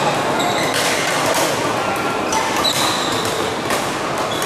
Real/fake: real